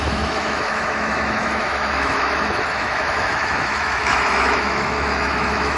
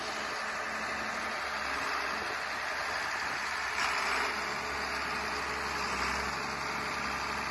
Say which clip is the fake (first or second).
first